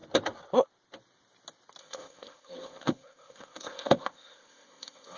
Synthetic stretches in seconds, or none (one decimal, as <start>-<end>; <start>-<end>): 1.8-5.2